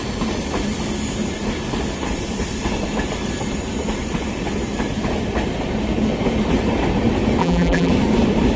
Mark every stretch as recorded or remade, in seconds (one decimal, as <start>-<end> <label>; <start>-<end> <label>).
0.0-7.4 recorded; 7.4-7.9 remade; 7.9-8.6 recorded